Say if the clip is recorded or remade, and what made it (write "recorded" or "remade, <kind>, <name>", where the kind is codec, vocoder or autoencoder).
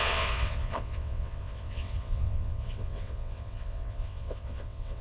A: remade, vocoder, WaveNeXt